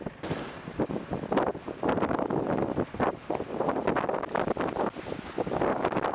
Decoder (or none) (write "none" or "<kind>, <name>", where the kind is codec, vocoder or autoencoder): none